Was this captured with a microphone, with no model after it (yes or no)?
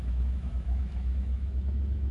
no